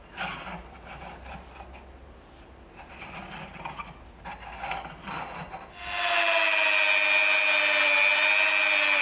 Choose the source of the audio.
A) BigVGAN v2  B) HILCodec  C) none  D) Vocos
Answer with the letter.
C